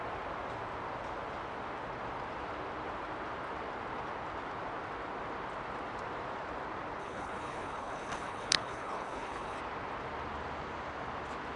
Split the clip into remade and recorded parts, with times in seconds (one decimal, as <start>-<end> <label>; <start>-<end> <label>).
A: 0.0-7.0 recorded; 7.0-9.6 remade; 9.6-11.6 recorded